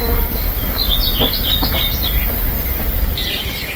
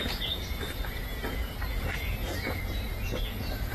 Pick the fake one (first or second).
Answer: second